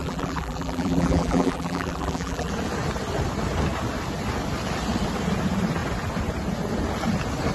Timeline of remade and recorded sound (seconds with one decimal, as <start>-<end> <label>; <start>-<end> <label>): 0.0-2.5 remade; 2.5-7.5 recorded